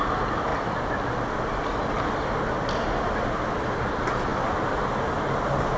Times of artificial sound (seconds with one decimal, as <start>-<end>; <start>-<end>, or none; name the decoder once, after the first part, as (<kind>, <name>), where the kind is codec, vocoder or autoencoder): none